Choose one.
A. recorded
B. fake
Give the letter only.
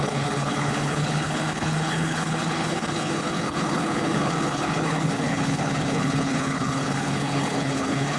B